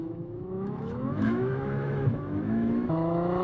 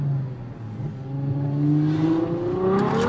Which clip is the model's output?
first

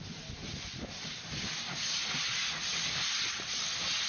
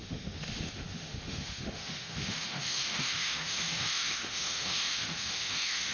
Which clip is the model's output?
second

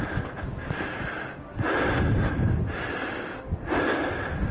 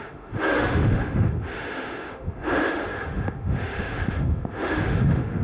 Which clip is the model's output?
second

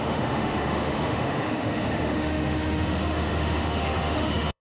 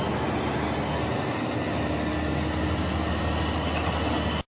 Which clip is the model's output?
first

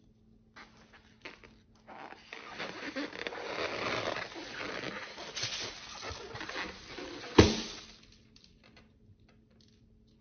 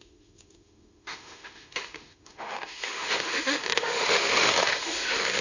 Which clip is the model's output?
second